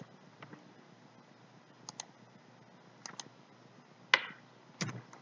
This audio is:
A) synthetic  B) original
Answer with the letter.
B